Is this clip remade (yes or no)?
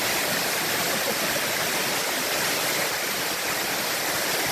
yes